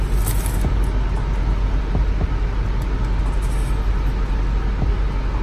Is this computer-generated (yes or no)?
no